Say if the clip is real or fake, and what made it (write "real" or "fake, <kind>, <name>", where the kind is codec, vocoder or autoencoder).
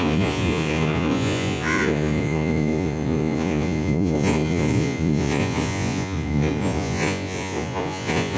fake, vocoder, Vocos